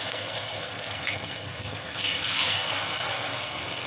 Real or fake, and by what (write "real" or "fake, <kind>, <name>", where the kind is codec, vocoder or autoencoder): fake, codec, SNAC